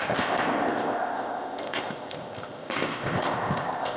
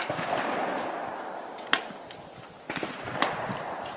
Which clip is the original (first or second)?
second